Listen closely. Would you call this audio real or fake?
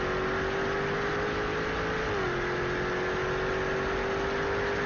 real